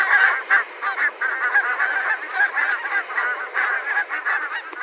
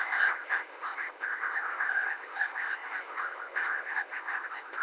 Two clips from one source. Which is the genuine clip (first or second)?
first